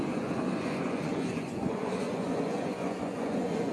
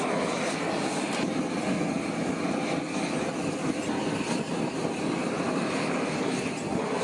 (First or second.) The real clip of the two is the second